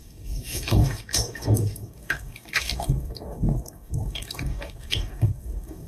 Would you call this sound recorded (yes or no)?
no